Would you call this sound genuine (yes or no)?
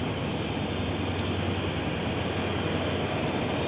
yes